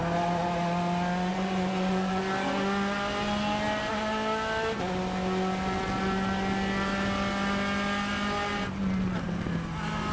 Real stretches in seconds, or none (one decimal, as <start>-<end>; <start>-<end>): 0.0-1.3; 2.2-10.1